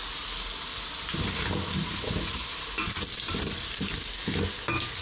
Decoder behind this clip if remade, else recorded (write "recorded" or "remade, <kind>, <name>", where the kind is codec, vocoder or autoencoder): recorded